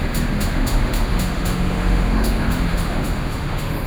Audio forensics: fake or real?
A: fake